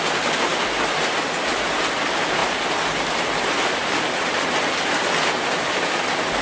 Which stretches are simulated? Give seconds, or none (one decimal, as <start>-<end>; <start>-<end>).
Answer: none